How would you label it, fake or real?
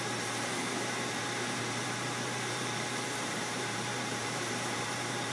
fake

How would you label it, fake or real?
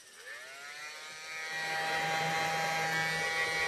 real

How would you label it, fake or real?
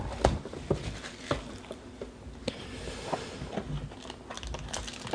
real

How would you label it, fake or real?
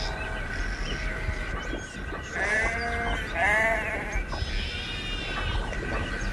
real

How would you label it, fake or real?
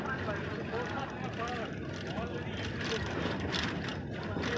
real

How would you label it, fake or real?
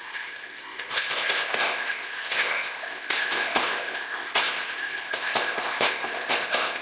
fake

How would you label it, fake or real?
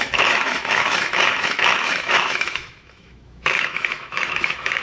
fake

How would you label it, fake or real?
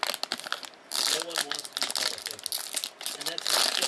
real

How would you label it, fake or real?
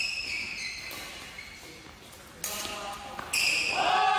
real